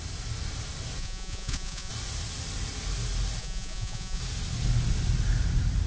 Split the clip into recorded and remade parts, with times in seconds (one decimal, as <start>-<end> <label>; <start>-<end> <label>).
0.0-1.0 recorded; 1.0-1.9 remade; 1.9-3.4 recorded; 3.4-4.2 remade; 4.2-5.9 recorded